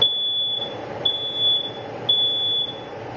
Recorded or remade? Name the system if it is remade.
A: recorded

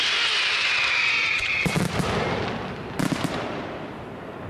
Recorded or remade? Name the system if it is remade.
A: recorded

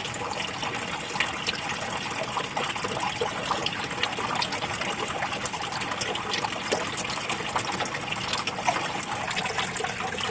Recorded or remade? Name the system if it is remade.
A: recorded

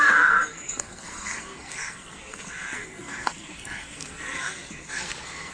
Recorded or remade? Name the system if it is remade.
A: remade, codec, SNAC